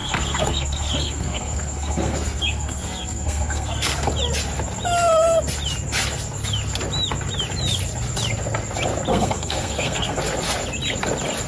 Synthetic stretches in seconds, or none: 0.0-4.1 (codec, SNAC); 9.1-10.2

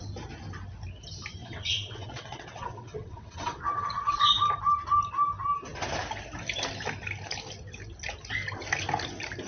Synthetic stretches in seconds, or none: 1.4-4.3 (vocoder, WaveNeXt)

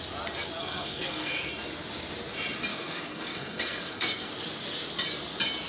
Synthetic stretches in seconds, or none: 0.6-1.5 (codec, SNAC); 2.7-4.3